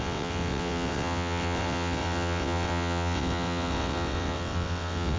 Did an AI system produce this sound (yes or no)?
yes